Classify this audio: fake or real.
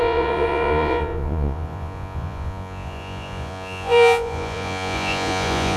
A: fake